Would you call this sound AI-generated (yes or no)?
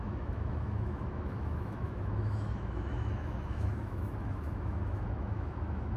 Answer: yes